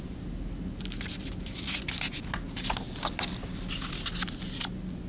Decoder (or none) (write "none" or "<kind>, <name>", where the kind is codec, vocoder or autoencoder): none